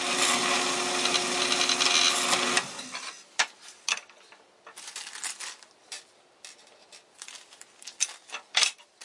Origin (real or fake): real